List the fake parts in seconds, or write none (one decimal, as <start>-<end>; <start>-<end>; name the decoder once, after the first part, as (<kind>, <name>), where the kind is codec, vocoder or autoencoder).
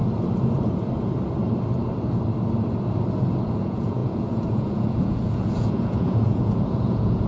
3.5-7.3 (vocoder, Vocos)